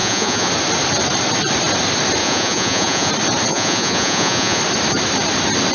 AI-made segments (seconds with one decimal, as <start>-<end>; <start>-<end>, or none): 0.0-0.5; 2.2-3.1; 3.5-4.6